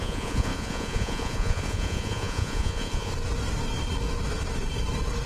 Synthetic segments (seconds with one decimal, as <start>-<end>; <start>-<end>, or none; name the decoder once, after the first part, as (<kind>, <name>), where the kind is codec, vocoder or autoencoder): 0.0-3.1 (vocoder, Vocos)